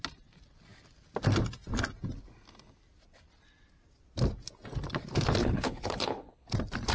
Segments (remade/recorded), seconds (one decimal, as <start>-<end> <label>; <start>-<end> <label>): 0.0-5.4 recorded; 5.4-6.5 remade; 6.5-6.9 recorded